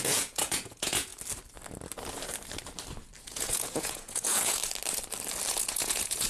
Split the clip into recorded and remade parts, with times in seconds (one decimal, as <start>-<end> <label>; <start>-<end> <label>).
0.0-1.1 remade; 1.1-3.2 recorded; 3.2-4.6 remade; 4.6-5.5 recorded; 5.5-6.3 remade